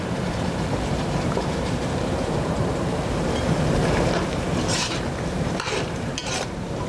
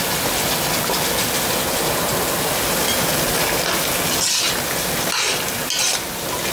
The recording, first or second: second